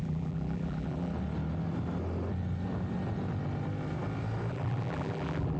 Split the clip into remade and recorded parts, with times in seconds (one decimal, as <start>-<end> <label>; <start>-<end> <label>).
0.0-1.1 remade; 1.1-4.5 recorded; 4.5-5.6 remade